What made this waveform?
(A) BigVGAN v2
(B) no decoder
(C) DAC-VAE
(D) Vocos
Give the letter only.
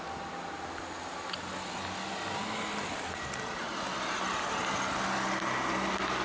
B